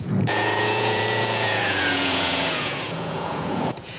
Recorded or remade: remade